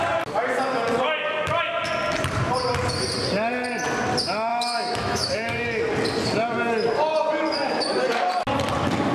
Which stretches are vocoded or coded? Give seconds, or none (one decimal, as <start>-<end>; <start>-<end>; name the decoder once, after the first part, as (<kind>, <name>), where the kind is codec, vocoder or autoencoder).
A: 4.5-5.8 (autoencoder, DAC-VAE)